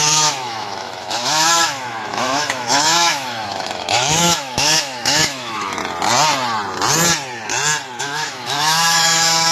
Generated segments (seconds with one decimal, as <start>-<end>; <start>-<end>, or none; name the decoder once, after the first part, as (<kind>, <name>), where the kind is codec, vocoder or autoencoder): 0.0-5.8 (autoencoder, DAC-VAE); 8.0-9.5